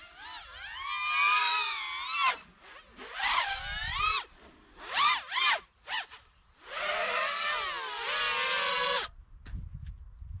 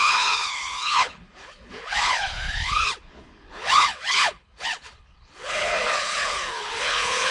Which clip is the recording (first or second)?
first